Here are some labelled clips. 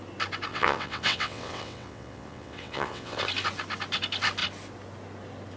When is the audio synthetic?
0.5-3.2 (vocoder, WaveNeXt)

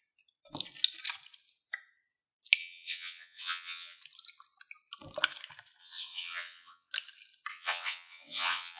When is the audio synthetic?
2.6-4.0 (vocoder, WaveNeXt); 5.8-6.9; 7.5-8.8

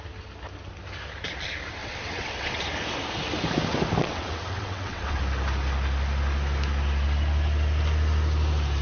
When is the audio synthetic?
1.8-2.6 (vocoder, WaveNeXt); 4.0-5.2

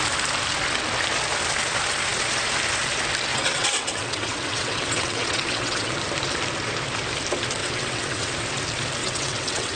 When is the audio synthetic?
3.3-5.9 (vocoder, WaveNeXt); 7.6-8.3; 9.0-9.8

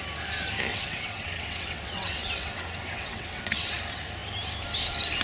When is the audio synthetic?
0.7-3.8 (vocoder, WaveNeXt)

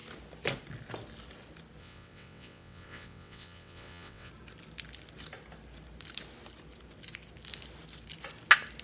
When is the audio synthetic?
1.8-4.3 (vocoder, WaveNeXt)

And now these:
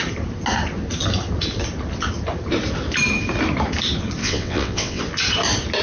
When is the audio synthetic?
4.2-5.0 (vocoder, WaveNeXt)

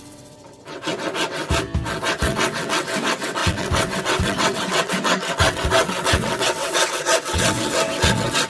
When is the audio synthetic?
0.0-1.4 (vocoder, WaveNeXt); 2.0-8.5